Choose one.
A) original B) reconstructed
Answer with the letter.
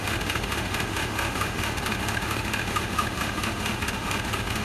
B